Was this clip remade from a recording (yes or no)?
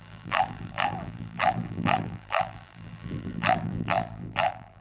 yes